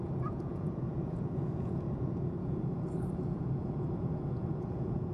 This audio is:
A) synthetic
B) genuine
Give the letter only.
A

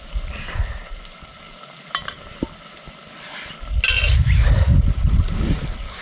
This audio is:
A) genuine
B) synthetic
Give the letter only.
A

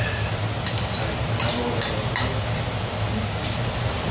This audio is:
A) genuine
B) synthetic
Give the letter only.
A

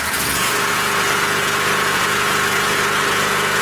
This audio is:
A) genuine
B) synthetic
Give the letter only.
B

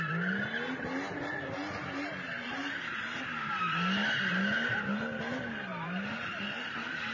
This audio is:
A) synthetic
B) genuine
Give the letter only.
B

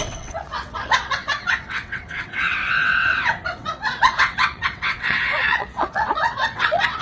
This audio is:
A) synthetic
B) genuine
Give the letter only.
A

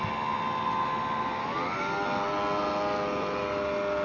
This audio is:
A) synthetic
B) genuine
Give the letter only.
B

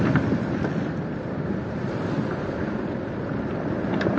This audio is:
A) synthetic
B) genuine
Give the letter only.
B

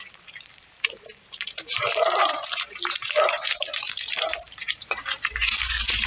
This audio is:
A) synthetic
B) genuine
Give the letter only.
A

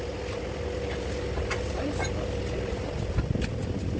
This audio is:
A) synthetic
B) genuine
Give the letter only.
B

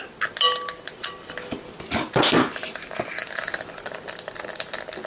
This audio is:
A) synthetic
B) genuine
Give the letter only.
B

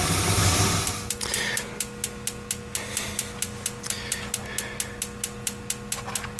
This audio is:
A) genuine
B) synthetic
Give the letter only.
A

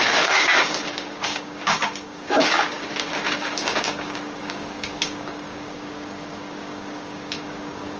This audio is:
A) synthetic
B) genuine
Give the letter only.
A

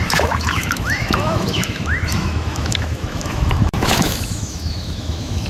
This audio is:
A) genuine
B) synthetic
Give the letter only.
B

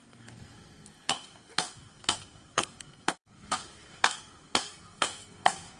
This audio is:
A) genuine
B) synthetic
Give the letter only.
B